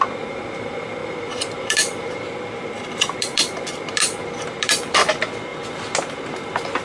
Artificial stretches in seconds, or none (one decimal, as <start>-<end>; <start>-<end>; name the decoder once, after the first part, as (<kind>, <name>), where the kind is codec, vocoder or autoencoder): 1.0-5.1 (vocoder, BigVGAN v2)